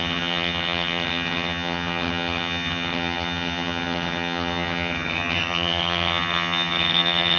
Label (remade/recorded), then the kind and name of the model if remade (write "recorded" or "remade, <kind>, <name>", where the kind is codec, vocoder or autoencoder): remade, vocoder, HiFi-GAN